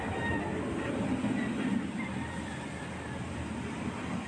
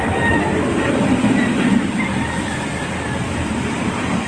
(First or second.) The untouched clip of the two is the first